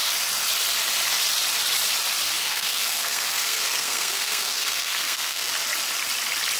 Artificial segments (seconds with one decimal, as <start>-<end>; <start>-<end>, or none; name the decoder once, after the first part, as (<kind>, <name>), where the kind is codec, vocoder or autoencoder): 2.4-5.5 (codec, SNAC)